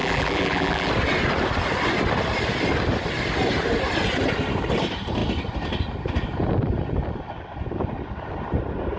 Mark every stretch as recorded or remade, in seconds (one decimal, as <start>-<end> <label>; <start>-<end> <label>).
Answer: 0.0-0.9 remade; 0.9-9.0 recorded